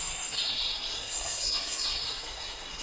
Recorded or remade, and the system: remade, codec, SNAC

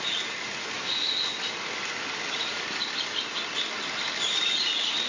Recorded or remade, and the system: recorded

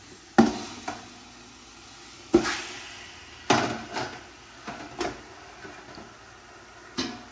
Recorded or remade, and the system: recorded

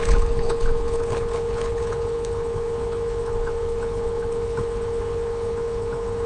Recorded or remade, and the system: remade, codec, HILCodec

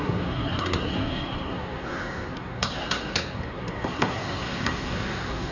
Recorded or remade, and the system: remade, codec, SNAC